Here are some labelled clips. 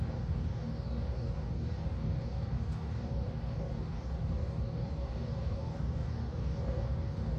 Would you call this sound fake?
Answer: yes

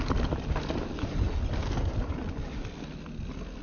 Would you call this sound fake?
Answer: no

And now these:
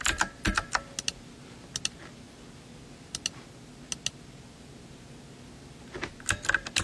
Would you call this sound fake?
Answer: no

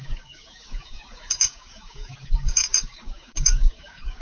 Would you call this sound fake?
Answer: yes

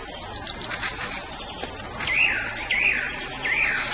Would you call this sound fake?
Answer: no